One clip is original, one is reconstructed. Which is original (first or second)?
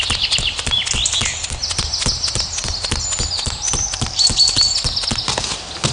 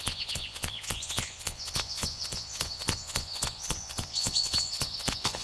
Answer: first